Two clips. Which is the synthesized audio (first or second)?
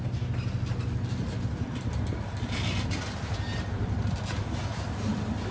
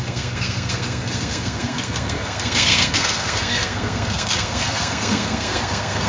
second